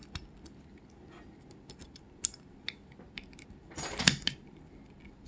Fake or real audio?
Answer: real